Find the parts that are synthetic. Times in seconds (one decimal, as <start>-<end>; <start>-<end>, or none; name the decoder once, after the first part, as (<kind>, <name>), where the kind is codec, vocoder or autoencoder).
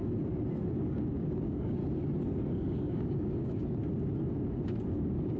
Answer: 0.8-1.8 (codec, DAC); 2.5-3.6; 4.9-5.4